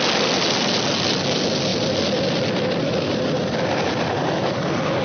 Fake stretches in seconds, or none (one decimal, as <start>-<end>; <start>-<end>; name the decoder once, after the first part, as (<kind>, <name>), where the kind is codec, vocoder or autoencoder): none